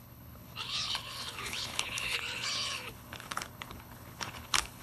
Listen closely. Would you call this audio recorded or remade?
remade